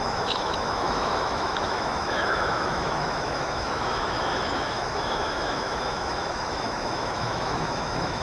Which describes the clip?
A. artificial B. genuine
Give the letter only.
A